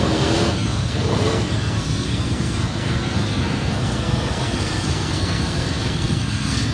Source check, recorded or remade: remade